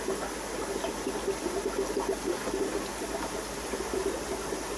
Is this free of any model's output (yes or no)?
yes